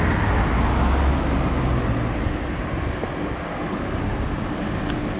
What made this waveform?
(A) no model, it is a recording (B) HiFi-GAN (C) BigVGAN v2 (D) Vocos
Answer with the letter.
A